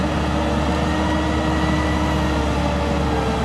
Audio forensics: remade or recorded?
recorded